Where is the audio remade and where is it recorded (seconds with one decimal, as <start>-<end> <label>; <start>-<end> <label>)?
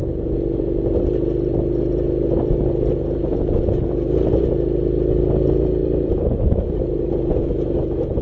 0.0-5.8 recorded; 5.8-7.1 remade; 7.1-8.2 recorded